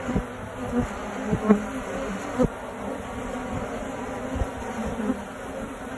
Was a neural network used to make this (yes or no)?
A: no